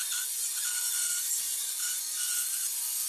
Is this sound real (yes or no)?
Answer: yes